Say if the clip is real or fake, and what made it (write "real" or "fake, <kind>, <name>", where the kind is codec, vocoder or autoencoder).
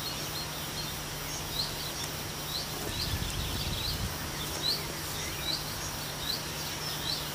real